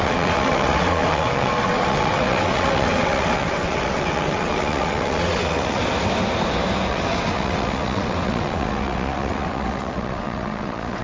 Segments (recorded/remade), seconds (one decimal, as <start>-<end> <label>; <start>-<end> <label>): 0.0-5.8 remade; 5.8-6.9 recorded; 6.9-11.0 remade